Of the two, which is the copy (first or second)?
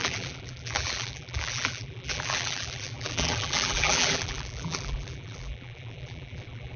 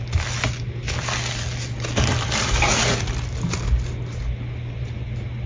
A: first